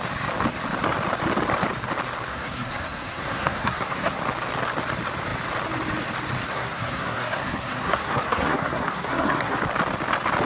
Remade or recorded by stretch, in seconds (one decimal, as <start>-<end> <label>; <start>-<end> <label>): 0.0-2.3 recorded; 2.3-4.2 remade; 4.2-6.5 recorded; 6.5-9.6 remade; 9.6-10.5 recorded